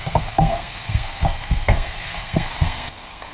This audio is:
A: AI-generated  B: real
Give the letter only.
A